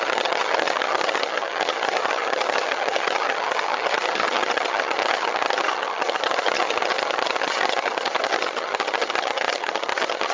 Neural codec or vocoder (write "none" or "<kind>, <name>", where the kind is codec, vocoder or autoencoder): vocoder, HiFi-GAN